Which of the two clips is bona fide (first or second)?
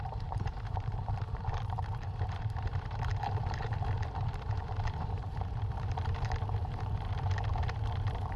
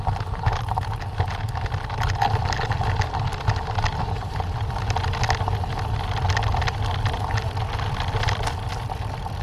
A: second